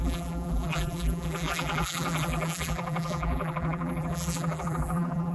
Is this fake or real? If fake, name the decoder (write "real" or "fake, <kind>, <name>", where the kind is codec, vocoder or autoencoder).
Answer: fake, vocoder, BigVGAN v2